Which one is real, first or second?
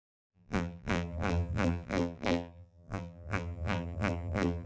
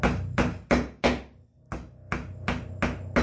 second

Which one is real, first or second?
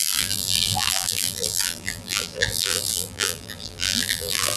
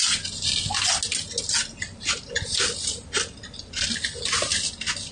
second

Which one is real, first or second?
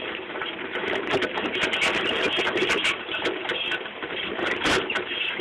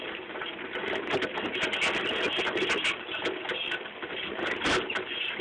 second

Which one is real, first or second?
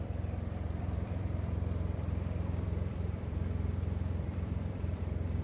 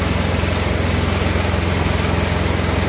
second